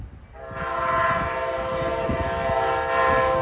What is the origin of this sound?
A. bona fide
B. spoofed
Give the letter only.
A